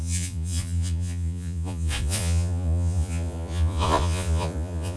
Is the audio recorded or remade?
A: remade